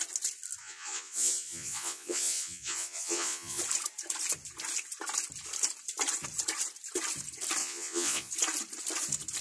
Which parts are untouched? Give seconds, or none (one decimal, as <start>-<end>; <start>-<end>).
0.0-0.6; 3.6-7.6; 8.3-9.4